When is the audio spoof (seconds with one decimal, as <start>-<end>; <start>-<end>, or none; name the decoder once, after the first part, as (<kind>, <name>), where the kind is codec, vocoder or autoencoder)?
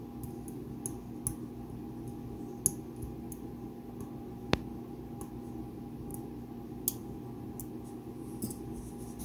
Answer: none